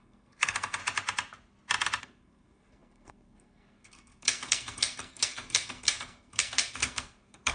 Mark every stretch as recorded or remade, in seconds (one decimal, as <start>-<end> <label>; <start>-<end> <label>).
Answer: 0.0-0.8 remade; 0.8-2.0 recorded; 2.0-7.5 remade